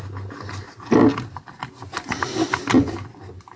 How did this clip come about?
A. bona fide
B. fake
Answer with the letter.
A